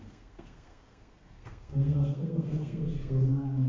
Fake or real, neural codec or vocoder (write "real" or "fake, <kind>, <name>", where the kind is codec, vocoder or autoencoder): fake, codec, SNAC